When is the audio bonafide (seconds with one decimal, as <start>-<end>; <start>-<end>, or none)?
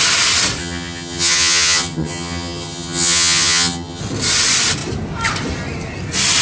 0.0-0.6; 4.0-6.4